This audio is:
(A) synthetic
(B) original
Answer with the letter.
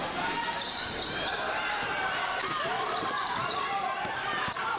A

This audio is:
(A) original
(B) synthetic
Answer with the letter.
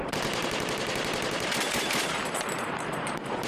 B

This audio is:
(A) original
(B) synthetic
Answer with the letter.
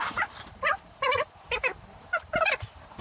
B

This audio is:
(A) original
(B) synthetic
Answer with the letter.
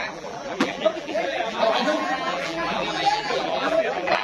B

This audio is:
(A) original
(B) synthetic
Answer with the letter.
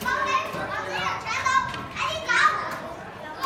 A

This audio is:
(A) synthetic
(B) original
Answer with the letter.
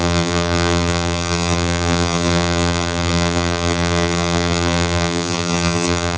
A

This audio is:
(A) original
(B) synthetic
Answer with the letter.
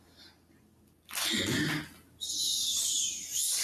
A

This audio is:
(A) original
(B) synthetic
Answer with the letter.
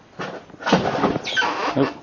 A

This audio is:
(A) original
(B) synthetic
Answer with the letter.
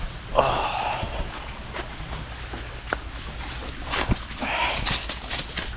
A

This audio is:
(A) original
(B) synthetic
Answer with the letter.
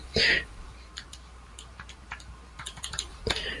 B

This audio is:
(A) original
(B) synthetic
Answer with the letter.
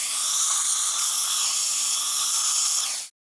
A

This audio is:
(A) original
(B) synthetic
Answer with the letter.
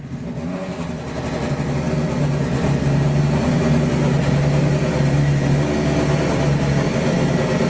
A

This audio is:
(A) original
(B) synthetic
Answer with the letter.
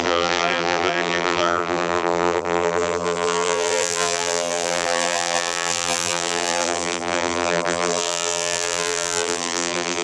B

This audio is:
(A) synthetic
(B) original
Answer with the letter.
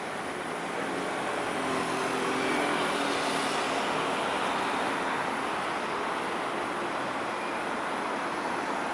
B